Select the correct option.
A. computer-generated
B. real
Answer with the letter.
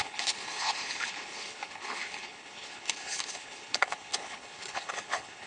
A